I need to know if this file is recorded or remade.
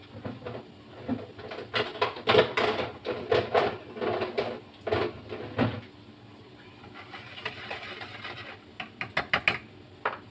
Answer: recorded